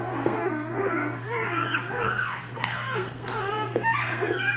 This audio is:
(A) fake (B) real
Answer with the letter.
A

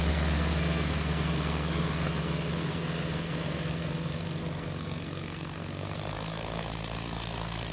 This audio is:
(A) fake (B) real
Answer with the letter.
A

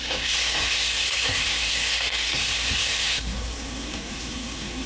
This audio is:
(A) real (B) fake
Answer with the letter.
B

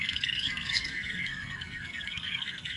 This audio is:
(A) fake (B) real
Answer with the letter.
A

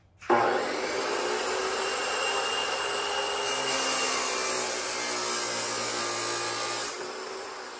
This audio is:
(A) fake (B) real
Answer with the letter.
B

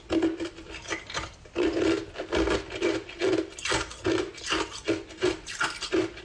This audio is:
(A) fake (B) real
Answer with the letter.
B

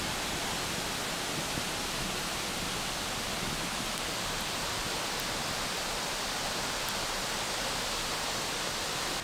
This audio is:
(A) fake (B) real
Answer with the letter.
B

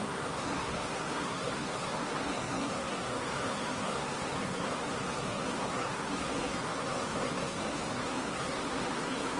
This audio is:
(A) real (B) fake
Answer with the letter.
B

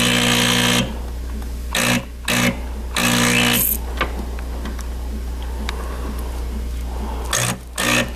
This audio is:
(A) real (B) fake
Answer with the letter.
A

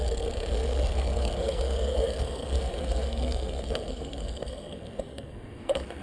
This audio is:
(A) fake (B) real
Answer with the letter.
A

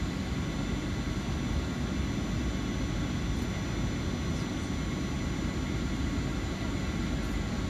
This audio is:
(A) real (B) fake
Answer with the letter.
A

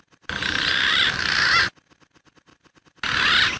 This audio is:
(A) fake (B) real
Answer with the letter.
B